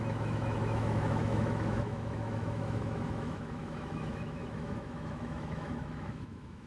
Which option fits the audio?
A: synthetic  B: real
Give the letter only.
A